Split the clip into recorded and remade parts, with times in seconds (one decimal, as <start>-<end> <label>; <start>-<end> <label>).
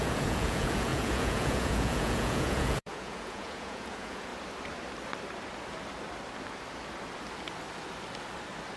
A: 0.0-4.3 remade; 4.3-8.8 recorded